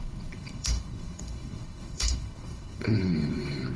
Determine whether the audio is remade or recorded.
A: remade